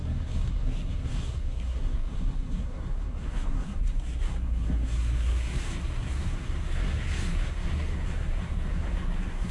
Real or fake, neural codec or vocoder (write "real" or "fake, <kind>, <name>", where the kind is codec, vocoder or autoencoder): fake, codec, SNAC